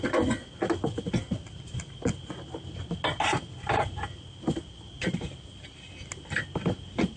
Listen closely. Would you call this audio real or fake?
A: real